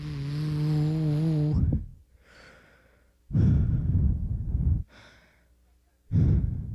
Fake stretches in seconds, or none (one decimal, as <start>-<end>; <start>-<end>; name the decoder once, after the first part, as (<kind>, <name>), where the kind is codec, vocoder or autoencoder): none